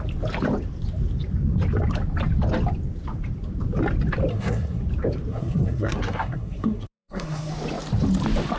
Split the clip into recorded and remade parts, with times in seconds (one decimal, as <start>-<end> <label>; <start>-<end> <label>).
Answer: 0.0-4.3 recorded; 4.3-4.8 remade; 4.8-5.3 recorded; 5.3-7.5 remade; 7.5-8.6 recorded